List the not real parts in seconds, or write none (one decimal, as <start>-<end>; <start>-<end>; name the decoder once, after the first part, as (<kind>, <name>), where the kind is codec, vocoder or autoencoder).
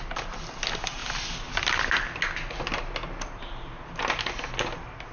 none